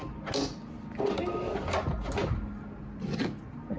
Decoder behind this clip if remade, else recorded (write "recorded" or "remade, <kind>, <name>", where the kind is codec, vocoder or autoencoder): recorded